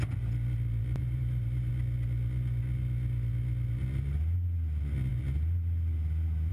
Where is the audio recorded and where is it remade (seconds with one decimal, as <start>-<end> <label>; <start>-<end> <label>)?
0.0-1.0 recorded; 1.0-1.7 remade; 1.7-6.5 recorded